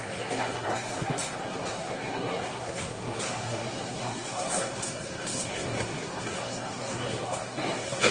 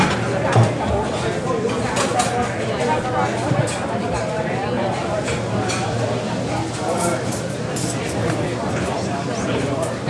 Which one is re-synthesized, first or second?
first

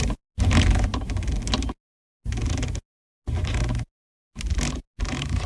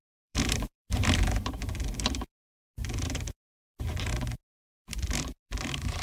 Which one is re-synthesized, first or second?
second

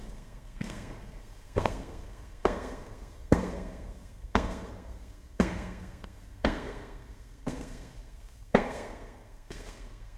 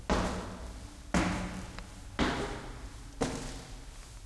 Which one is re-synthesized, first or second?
first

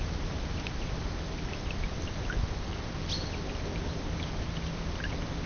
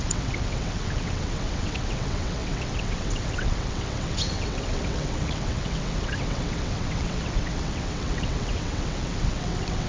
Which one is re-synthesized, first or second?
second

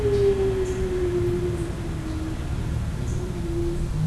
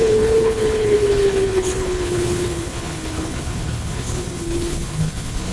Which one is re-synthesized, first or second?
second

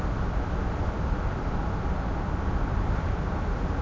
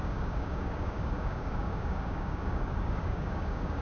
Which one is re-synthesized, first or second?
second